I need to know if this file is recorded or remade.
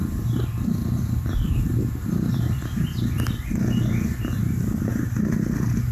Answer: remade